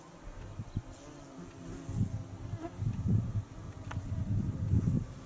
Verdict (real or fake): real